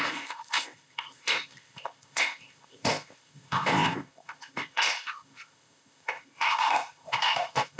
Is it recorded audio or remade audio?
remade